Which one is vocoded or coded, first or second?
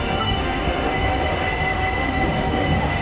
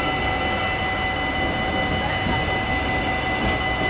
first